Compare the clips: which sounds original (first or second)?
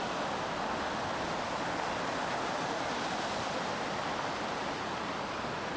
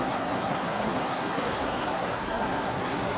first